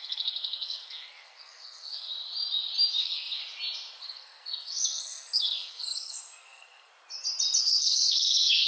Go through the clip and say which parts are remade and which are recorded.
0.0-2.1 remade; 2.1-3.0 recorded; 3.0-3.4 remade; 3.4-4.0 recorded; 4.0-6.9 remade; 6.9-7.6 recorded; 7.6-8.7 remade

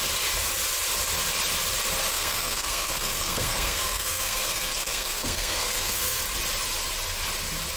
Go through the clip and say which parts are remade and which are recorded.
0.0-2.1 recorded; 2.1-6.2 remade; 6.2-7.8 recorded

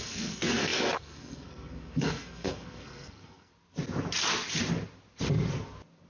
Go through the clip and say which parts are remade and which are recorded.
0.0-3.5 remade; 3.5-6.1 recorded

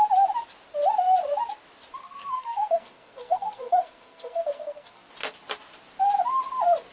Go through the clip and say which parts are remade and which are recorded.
0.0-2.0 recorded; 2.0-5.1 remade; 5.1-6.9 recorded

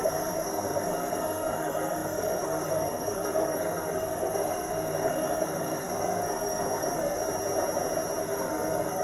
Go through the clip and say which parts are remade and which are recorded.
0.0-7.2 remade; 7.2-8.2 recorded; 8.2-9.0 remade